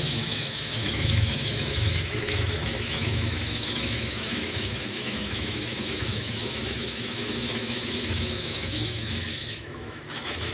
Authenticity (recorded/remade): remade